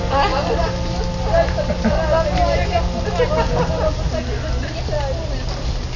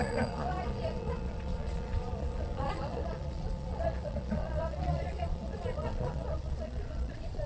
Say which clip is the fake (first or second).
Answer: second